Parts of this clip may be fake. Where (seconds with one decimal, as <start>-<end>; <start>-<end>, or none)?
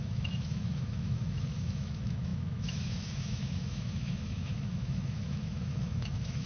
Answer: 0.0-6.5